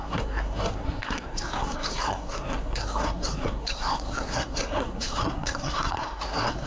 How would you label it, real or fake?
fake